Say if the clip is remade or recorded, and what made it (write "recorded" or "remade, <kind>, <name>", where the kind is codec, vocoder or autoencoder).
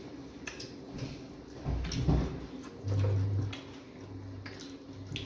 recorded